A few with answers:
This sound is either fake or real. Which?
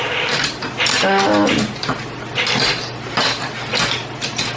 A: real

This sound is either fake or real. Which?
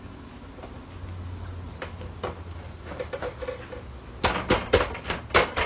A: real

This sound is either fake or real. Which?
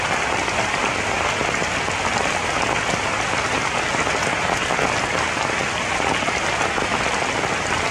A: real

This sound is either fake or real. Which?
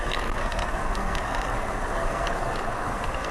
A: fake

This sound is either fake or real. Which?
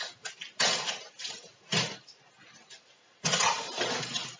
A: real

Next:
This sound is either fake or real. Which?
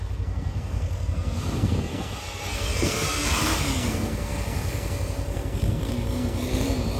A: fake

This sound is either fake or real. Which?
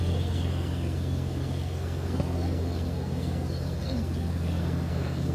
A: fake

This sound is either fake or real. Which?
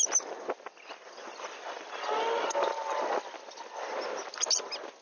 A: real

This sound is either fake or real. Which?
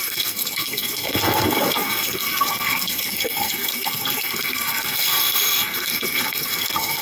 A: fake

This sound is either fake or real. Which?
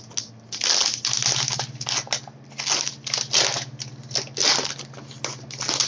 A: real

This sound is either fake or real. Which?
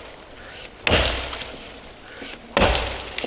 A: real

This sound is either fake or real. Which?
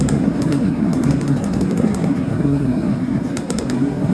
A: fake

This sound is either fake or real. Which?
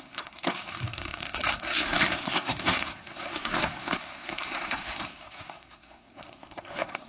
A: fake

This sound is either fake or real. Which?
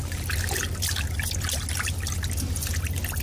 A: real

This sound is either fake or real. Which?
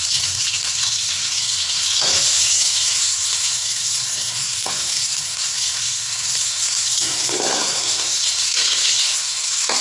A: fake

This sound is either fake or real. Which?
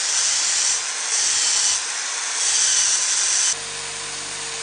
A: real